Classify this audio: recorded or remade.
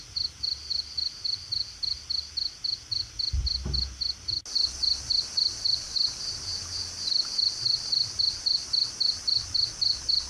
recorded